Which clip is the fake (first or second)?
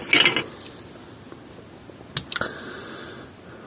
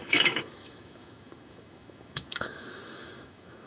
second